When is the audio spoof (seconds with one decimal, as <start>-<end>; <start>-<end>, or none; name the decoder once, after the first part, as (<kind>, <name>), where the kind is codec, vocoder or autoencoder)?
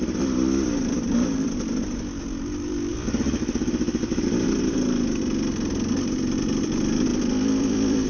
0.0-7.1 (vocoder, BigVGAN v2); 7.6-8.1